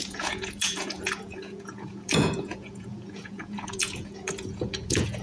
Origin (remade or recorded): remade